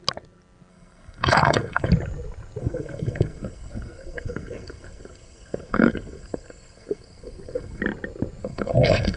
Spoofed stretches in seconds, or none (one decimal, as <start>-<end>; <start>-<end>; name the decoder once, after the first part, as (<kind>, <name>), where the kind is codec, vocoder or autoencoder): 0.7-1.9 (codec, SNAC); 2.6-7.8; 8.4-9.2